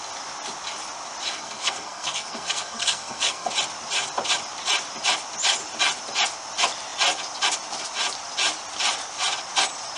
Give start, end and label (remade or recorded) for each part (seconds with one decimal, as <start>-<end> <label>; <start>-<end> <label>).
0.0-1.3 recorded; 1.3-3.5 remade; 3.5-10.0 recorded